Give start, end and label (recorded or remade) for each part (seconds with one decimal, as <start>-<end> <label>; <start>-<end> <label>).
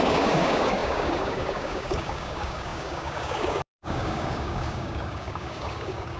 0.0-6.2 remade